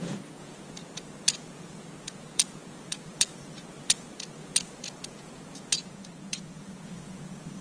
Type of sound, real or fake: fake